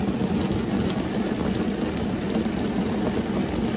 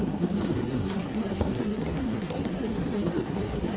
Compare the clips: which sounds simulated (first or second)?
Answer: second